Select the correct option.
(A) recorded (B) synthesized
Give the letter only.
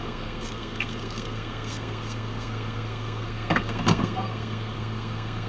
B